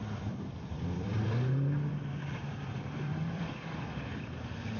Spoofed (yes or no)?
yes